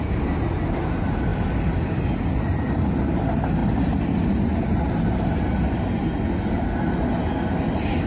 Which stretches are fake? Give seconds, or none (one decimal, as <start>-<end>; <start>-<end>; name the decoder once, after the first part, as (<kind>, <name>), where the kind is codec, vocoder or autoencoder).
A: none